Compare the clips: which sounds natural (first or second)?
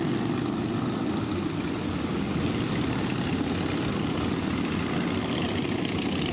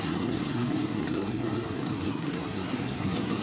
first